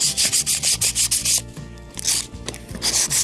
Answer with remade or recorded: recorded